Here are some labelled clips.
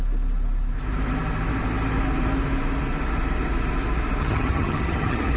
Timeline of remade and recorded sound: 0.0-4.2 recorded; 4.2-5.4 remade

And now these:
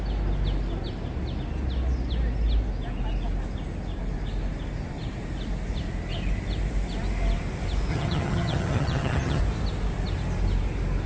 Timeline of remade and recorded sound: 0.0-7.9 recorded; 7.9-9.4 remade; 9.4-11.1 recorded

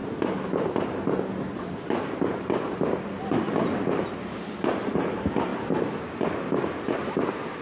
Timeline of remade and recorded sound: 0.0-7.6 recorded

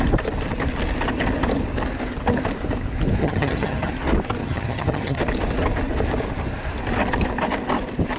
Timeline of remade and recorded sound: 0.0-3.2 recorded; 3.2-3.9 remade; 3.9-4.4 recorded; 4.4-5.2 remade; 5.2-8.2 recorded

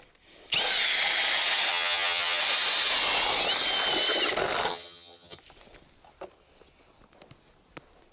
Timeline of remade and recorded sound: 0.0-1.7 recorded; 1.7-2.4 remade; 2.4-4.7 recorded; 4.7-5.4 remade; 5.4-8.1 recorded

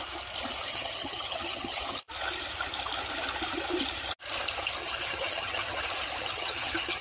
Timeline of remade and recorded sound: 0.0-0.7 recorded; 0.7-1.8 remade; 1.8-4.8 recorded; 4.8-5.8 remade; 5.8-6.2 recorded; 6.2-7.0 remade

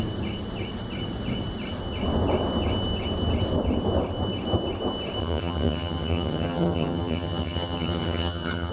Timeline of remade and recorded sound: 0.0-5.2 recorded; 5.2-8.7 remade

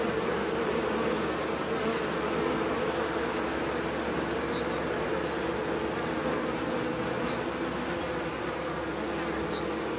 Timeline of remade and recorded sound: 0.0-10.0 recorded